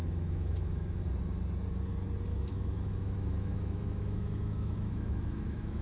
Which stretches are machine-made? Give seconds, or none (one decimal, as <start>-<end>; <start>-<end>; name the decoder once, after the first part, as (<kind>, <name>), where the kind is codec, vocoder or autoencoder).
0.0-1.0 (autoencoder, DAC-VAE); 2.3-5.8